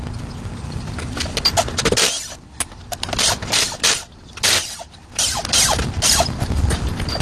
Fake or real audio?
real